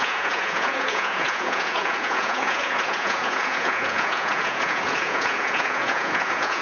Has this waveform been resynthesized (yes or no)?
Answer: yes